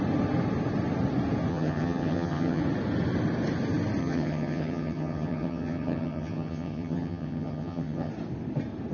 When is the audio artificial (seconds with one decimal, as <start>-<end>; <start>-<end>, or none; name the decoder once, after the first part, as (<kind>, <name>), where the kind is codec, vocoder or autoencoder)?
1.5-2.6 (vocoder, HiFi-GAN); 4.0-8.1